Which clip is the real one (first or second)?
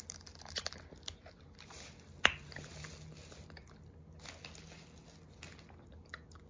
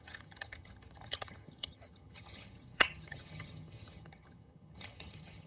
first